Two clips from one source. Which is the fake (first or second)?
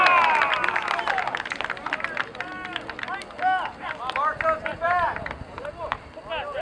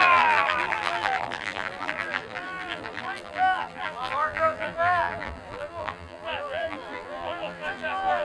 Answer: second